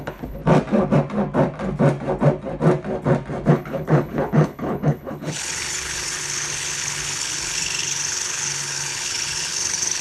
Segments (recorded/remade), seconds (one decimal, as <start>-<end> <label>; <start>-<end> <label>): 0.0-0.4 remade; 0.4-3.5 recorded; 3.5-10.0 remade

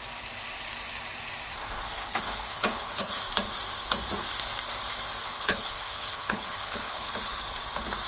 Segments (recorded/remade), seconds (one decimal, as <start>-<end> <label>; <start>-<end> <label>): 0.0-1.6 recorded; 1.6-3.2 remade; 3.2-5.2 recorded; 5.2-7.1 remade; 7.1-8.1 recorded

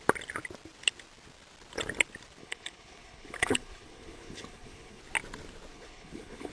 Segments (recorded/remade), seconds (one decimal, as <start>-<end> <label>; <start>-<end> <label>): 0.0-2.4 recorded; 2.4-5.0 remade; 5.0-5.7 recorded; 5.7-6.5 remade

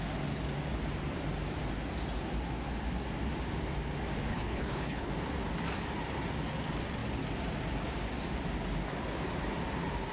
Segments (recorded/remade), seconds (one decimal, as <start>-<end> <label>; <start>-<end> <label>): 0.0-4.3 recorded; 4.3-5.1 remade; 5.1-10.1 recorded